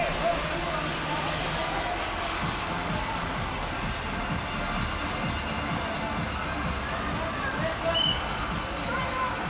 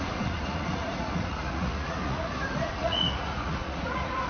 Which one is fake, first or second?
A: second